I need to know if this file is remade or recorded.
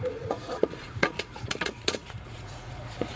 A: remade